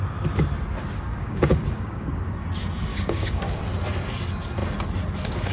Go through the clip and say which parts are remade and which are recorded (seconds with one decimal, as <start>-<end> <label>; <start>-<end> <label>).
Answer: 0.0-1.1 recorded; 1.1-2.1 remade; 2.1-2.9 recorded; 2.9-3.6 remade; 3.6-5.5 recorded